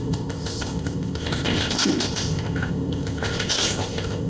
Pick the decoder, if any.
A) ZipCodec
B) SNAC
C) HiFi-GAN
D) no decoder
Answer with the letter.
A